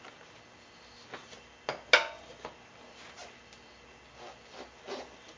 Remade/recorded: recorded